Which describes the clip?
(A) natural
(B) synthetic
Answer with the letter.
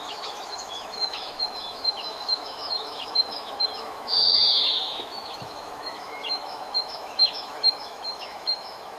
B